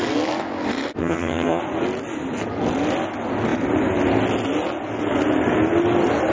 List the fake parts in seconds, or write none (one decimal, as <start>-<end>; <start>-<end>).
1.0-1.6